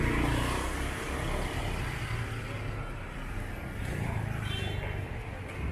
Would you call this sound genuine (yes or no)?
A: yes